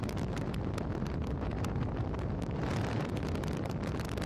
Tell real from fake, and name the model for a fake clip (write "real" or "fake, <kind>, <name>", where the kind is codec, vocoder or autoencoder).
real